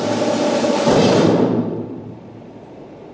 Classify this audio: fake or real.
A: fake